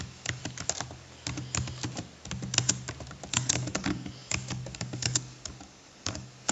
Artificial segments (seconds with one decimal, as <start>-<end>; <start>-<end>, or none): 0.0-0.4; 3.3-6.5